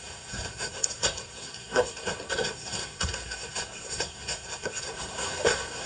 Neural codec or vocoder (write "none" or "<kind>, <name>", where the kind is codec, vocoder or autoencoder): codec, SNAC